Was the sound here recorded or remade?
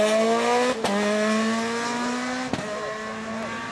recorded